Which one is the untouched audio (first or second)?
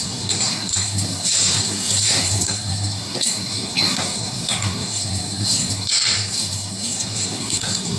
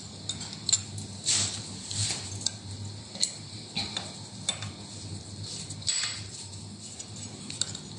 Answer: second